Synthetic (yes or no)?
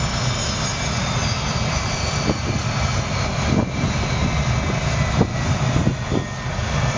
no